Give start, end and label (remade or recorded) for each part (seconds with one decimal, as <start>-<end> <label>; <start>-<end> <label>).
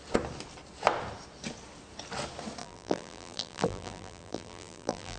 0.0-2.6 recorded; 2.6-5.2 remade